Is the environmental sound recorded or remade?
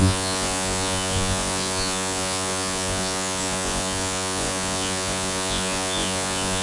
remade